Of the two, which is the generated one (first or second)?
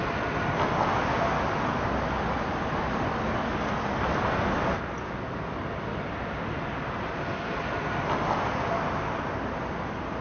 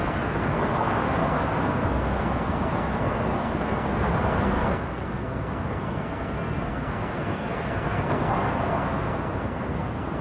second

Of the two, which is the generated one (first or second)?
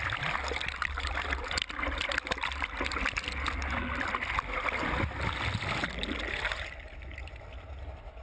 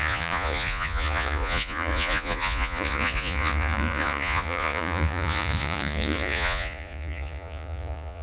second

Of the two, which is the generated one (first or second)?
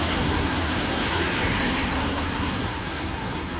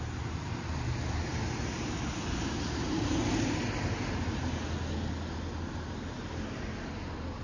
first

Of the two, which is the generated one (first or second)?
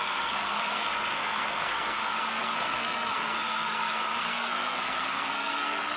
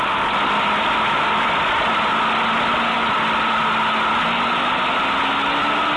first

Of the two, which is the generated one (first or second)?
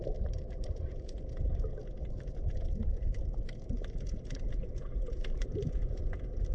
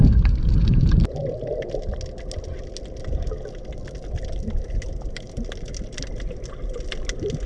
first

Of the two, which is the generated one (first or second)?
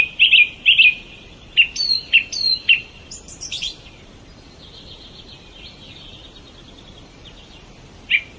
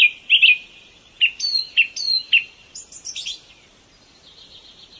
first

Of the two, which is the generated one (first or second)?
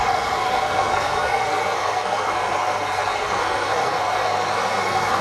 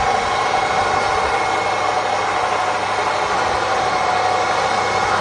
first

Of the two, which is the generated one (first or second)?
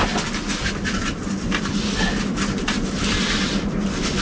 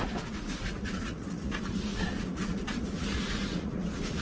second